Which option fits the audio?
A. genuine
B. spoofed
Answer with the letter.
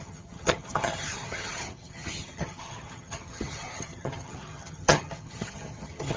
B